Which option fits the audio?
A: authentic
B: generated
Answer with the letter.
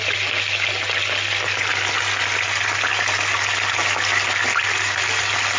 A